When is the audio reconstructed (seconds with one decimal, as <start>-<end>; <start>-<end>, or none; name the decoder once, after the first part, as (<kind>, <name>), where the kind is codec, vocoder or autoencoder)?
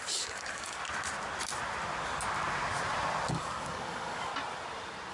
0.0-0.8 (codec, DAC); 3.3-4.3